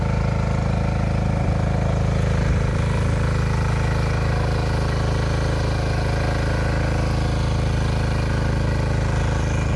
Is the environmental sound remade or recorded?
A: recorded